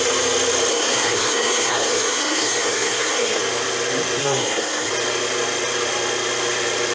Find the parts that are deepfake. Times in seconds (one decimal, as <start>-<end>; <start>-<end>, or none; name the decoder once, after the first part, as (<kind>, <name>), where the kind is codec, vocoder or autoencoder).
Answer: 0.7-3.4 (codec, SNAC); 4.2-4.9